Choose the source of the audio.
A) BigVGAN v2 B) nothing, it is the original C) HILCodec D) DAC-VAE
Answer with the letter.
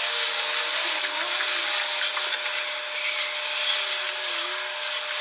B